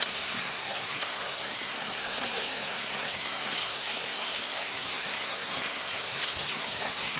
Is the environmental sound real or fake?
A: fake